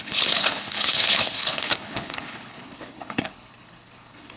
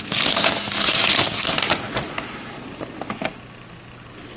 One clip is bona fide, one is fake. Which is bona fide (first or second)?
second